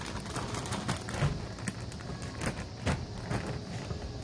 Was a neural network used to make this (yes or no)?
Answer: no